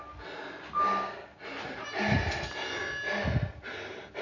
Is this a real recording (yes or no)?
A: yes